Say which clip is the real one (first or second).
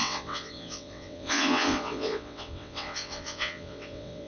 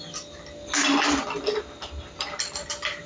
second